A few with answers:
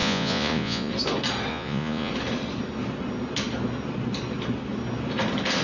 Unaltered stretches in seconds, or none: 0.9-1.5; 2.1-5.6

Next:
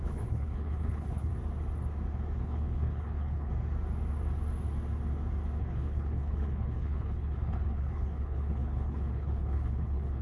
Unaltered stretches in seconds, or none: 1.3-2.4; 3.5-5.6

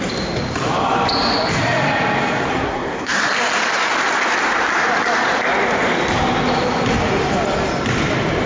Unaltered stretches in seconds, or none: 0.0-2.5; 3.2-8.5

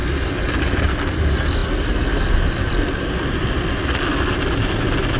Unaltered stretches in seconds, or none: 0.0-5.2

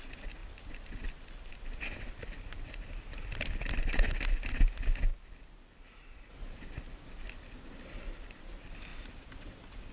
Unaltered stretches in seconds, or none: 0.0-9.9

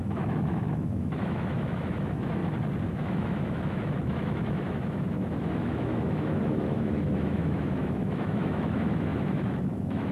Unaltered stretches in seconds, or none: 2.4-2.9

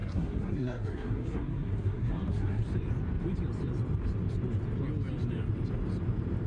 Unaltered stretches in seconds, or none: 2.6-6.5

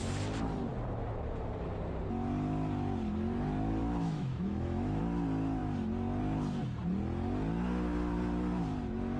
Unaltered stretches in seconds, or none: 0.0-3.8; 5.0-9.2